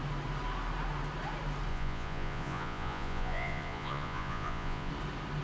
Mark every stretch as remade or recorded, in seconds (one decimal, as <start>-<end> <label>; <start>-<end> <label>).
0.0-1.7 recorded; 1.7-4.9 remade; 4.9-5.4 recorded